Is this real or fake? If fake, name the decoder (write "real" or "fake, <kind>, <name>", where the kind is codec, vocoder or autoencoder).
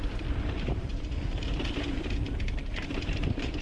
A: fake, vocoder, BigVGAN v2